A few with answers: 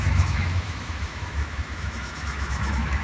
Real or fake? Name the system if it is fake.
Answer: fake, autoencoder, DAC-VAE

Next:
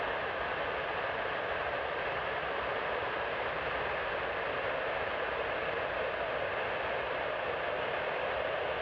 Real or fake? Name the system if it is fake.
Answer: real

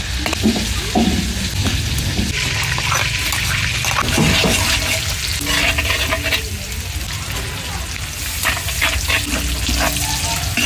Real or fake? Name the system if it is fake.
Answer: real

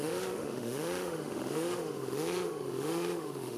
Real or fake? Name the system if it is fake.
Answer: fake, autoencoder, DAC-VAE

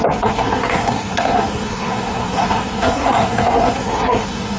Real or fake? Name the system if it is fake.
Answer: fake, codec, SNAC